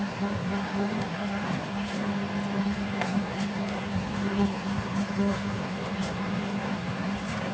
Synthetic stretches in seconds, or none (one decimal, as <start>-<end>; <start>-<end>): 0.0-2.1; 2.6-7.5